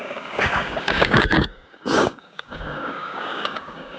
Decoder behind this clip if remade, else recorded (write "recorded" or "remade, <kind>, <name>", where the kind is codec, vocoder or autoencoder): remade, codec, DAC